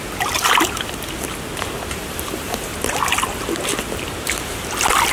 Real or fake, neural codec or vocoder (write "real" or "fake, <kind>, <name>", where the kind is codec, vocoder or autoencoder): real